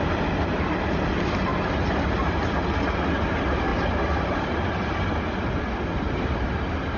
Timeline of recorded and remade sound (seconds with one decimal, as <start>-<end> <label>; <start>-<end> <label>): 0.0-7.0 recorded